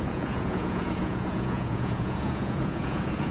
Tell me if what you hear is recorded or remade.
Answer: remade